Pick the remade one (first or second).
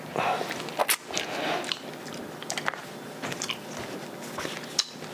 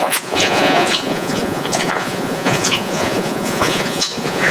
second